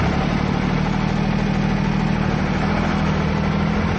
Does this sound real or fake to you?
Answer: real